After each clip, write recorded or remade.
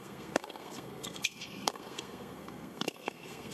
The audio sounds remade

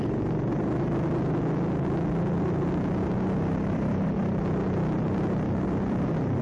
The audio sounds recorded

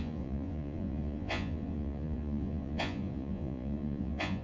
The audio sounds remade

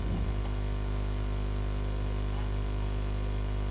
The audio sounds recorded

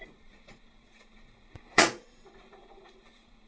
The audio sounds remade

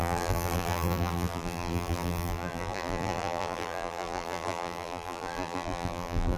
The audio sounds remade